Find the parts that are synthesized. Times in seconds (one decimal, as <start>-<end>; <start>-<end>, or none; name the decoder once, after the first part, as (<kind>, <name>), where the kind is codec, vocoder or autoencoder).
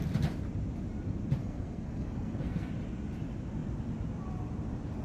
1.4-2.7 (codec, SNAC)